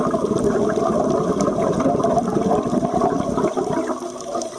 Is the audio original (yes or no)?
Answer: yes